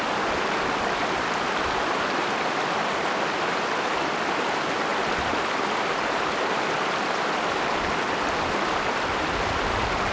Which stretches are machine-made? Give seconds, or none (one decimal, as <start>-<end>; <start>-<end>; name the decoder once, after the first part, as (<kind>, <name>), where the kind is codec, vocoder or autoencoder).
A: none